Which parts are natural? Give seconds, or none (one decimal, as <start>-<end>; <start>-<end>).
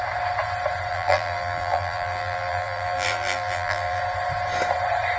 0.0-0.9; 4.0-5.2